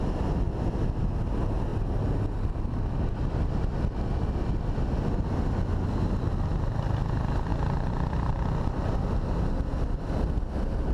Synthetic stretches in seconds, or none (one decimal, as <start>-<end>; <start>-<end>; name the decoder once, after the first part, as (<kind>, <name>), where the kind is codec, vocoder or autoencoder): none